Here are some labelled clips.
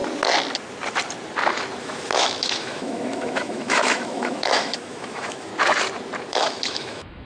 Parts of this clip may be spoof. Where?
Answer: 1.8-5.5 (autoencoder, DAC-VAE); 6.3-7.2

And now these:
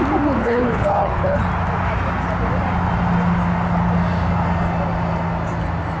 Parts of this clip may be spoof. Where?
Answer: 0.4-1.4 (codec, HILCodec)

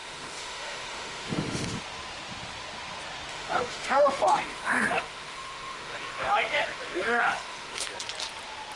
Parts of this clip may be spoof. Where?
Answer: 0.0-1.8 (autoencoder, DAC-VAE); 3.3-7.9